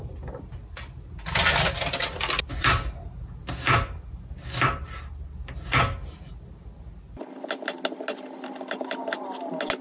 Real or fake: real